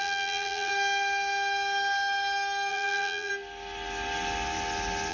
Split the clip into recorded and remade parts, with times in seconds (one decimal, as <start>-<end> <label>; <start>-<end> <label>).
0.0-0.7 remade; 0.7-2.7 recorded; 2.7-3.3 remade; 3.3-5.1 recorded